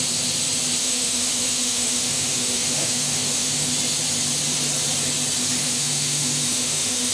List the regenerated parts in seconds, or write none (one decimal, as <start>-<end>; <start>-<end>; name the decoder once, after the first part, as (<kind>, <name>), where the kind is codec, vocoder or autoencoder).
0.8-3.7 (autoencoder, DAC-VAE); 5.6-7.1

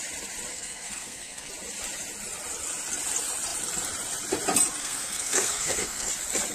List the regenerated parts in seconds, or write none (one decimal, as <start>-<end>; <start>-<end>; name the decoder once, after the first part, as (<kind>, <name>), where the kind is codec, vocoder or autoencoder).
0.5-1.5 (codec, SNAC); 4.8-6.1

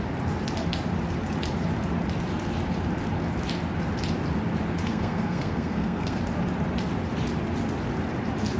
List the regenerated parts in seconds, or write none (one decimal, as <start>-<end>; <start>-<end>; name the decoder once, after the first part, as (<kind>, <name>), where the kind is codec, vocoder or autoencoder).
4.9-6.2 (codec, SNAC)